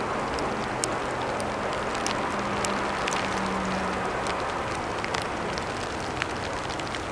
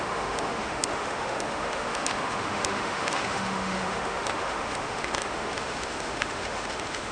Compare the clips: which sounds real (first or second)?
first